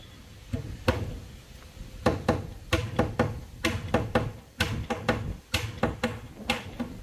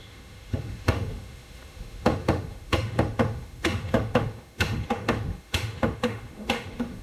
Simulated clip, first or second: second